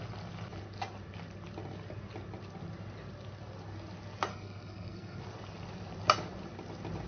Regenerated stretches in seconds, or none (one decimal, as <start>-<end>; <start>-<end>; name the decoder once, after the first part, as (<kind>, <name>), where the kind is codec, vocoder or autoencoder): 4.3-5.2 (codec, SNAC)